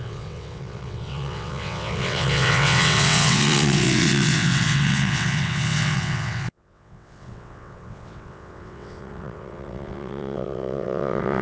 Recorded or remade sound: remade